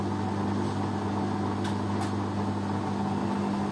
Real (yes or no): yes